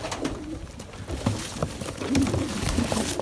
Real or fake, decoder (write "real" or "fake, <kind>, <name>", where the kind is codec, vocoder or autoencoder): real